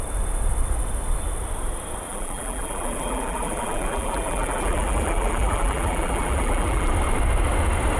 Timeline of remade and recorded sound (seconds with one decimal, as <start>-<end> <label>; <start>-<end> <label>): 0.0-2.1 recorded; 2.1-6.9 remade; 6.9-8.0 recorded